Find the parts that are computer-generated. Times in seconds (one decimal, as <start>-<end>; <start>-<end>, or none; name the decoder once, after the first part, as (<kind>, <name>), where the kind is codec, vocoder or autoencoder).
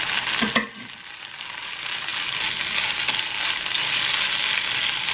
none